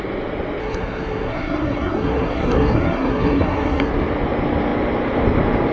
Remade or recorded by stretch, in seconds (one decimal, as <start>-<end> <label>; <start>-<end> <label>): 0.0-0.6 recorded; 0.6-3.9 remade; 3.9-5.7 recorded